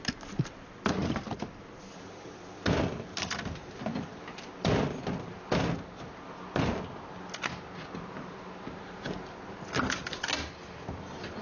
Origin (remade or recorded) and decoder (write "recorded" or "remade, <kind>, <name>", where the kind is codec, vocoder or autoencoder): recorded